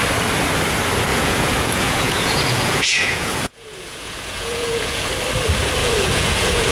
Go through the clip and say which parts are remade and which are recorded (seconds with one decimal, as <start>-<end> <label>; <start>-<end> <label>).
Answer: 0.0-1.1 recorded; 1.1-5.1 remade; 5.1-5.8 recorded; 5.8-6.7 remade